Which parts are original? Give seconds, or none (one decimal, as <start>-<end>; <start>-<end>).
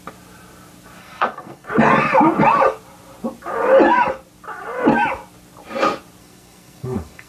0.0-1.0; 1.7-6.2